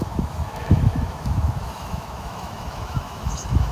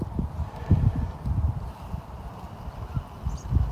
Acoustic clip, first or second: second